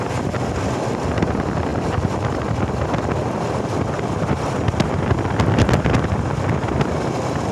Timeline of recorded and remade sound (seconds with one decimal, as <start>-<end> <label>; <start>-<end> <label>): 0.0-7.5 recorded